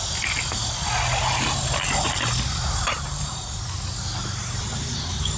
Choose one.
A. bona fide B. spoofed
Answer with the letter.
A